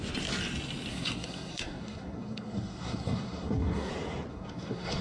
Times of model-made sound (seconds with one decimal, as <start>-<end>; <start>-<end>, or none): 0.9-3.9; 4.3-5.0